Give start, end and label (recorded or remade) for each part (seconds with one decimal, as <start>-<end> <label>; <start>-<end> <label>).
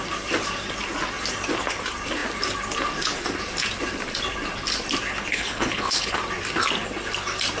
0.0-5.3 recorded; 5.3-6.2 remade; 6.2-7.6 recorded